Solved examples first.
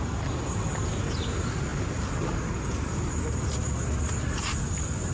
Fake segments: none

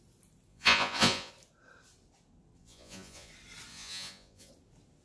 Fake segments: 0.5-1.3 (vocoder, Vocos); 2.6-3.3; 3.7-4.5

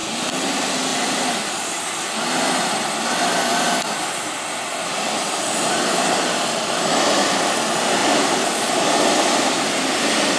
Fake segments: 0.0-0.5 (vocoder, BigVGAN v2); 8.0-9.6

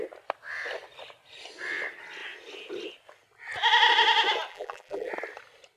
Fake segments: 4.5-5.1 (vocoder, BigVGAN v2)

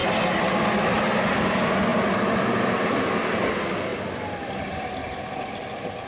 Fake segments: 1.9-3.1 (vocoder, BigVGAN v2); 3.9-6.1